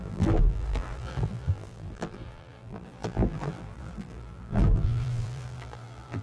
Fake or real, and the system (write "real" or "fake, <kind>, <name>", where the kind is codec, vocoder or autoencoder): fake, vocoder, BigVGAN v2